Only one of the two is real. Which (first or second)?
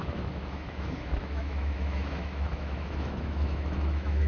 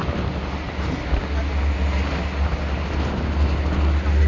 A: second